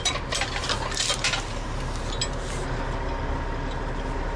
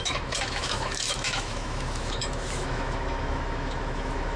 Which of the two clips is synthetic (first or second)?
second